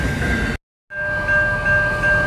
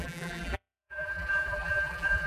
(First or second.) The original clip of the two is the first